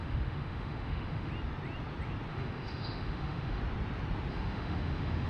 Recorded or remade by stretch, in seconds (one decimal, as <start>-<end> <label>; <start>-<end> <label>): 0.0-1.3 remade; 1.3-2.3 recorded; 2.3-3.6 remade; 3.6-4.3 recorded; 4.3-5.3 remade